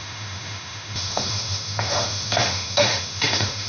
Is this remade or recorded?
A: remade